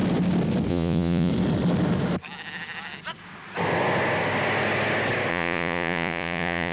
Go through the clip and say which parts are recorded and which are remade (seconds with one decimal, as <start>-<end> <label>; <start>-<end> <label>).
0.0-0.7 recorded; 0.7-1.3 remade; 1.3-5.3 recorded; 5.3-6.7 remade